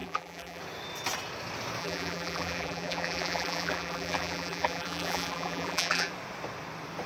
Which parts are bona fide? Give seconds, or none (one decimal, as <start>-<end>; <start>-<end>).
0.6-1.8; 6.1-7.1